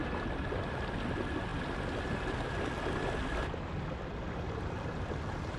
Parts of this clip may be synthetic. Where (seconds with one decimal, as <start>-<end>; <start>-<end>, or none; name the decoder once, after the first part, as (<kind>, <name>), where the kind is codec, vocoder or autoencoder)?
none